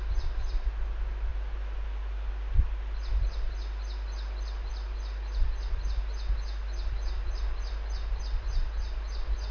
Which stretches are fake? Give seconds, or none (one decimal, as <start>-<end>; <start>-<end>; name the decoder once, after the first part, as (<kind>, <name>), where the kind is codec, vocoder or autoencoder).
none

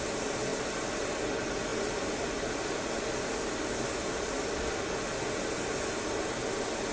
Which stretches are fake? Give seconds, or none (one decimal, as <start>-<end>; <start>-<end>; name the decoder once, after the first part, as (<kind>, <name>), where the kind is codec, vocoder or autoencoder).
none